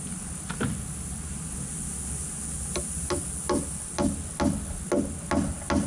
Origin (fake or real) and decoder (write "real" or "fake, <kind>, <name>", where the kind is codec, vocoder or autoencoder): real